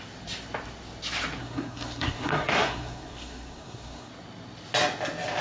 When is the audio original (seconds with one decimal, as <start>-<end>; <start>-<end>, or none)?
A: 0.0-1.4; 4.1-5.4